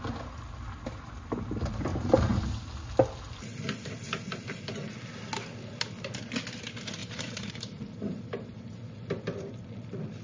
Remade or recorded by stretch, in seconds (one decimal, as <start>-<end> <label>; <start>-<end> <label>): 0.0-1.9 recorded; 1.9-2.8 remade; 2.8-7.0 recorded; 7.0-8.6 remade; 8.6-10.2 recorded